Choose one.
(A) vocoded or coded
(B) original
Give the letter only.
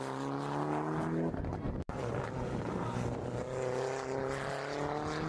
B